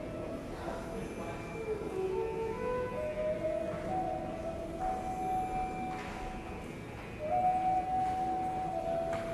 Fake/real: real